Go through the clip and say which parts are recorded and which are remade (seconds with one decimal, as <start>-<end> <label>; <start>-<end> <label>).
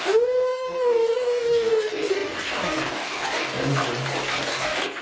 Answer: 0.0-3.7 remade; 3.7-4.3 recorded; 4.3-5.0 remade